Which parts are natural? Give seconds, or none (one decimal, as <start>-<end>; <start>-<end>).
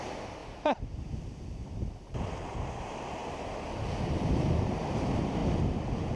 3.2-3.9